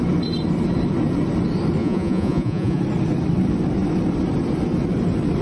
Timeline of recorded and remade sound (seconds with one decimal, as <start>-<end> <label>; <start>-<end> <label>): 0.0-1.8 recorded; 1.8-2.8 remade; 2.8-5.4 recorded